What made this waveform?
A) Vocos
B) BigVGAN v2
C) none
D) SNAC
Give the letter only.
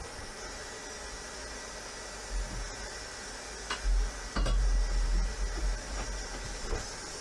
C